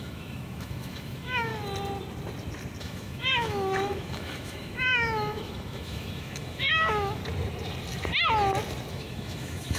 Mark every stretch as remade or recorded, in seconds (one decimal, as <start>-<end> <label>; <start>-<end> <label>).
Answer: 0.0-1.5 remade; 1.5-2.8 recorded; 2.8-7.2 remade; 7.2-8.9 recorded; 8.9-9.8 remade